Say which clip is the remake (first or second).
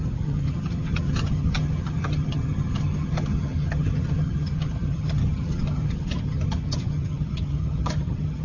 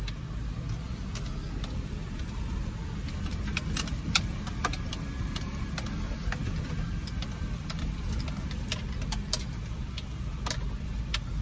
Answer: first